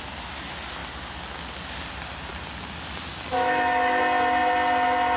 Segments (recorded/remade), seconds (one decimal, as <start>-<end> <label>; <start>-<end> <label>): 0.0-3.1 recorded; 3.1-4.0 remade; 4.0-5.2 recorded